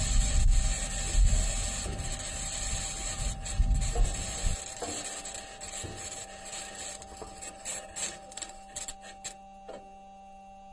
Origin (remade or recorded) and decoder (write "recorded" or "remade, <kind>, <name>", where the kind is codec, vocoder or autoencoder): recorded